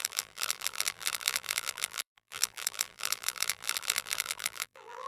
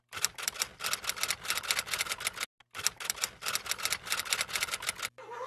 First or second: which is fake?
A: first